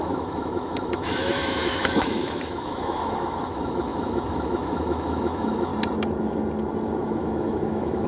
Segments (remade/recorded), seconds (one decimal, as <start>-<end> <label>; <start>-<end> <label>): 0.0-5.7 remade; 5.7-7.0 recorded; 7.0-8.1 remade